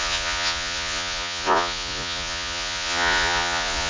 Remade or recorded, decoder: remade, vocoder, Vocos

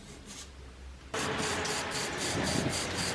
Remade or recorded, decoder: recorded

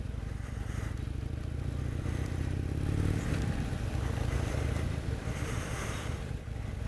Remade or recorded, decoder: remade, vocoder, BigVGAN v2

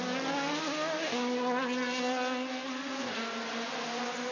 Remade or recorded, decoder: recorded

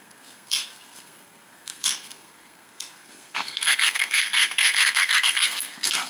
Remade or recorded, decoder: remade, codec, SNAC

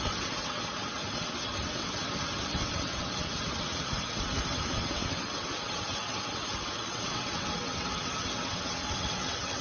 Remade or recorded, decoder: remade, vocoder, WaveNeXt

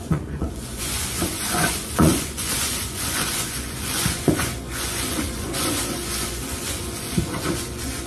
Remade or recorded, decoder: remade, vocoder, Vocos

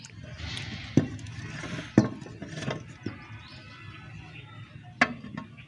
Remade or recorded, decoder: recorded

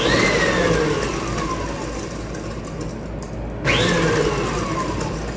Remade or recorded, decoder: recorded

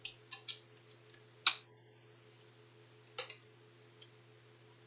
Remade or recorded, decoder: recorded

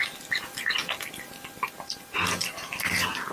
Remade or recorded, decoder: recorded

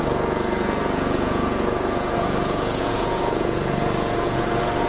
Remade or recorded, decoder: remade, vocoder, Vocos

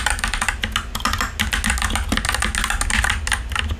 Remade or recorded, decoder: recorded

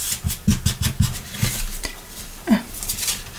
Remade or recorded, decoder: remade, vocoder, BigVGAN v2